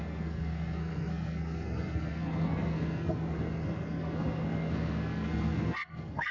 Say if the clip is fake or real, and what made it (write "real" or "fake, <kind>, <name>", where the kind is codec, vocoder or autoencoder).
fake, codec, SNAC